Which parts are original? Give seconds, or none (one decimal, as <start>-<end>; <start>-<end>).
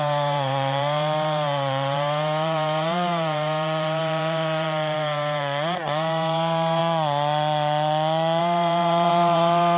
6.8-8.4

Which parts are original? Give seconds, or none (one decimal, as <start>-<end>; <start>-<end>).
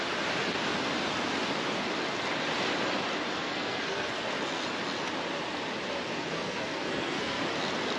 0.0-3.3; 4.3-6.1; 7.4-8.0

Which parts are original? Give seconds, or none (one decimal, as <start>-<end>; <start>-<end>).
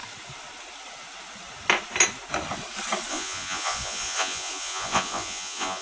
0.0-3.1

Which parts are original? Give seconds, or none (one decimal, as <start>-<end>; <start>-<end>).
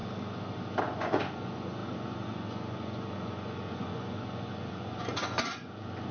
0.0-0.8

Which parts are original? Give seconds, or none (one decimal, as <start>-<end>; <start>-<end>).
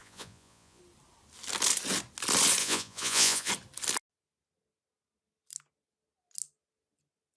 0.8-2.6; 3.5-7.4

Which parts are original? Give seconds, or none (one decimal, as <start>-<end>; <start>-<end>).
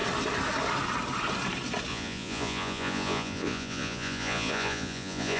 0.0-1.9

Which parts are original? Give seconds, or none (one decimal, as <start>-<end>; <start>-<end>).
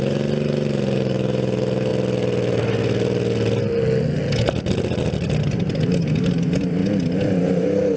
1.9-5.4; 6.8-7.4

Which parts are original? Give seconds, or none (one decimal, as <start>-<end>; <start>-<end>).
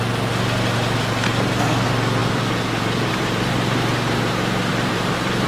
0.0-2.2; 4.2-4.7